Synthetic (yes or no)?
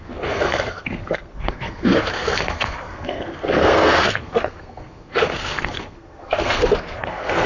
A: yes